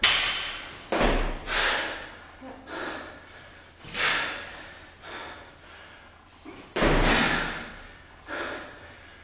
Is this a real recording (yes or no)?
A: yes